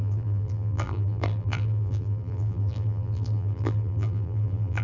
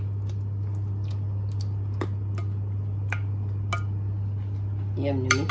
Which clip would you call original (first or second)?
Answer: second